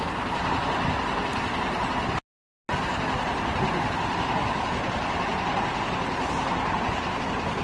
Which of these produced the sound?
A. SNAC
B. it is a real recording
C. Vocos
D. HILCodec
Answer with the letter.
B